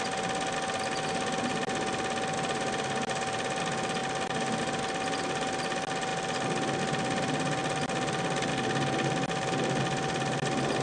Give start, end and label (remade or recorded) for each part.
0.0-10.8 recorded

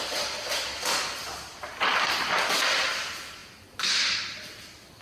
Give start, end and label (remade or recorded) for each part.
0.0-5.0 recorded

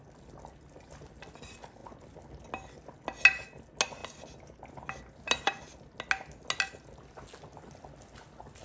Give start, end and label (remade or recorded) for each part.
0.0-8.6 recorded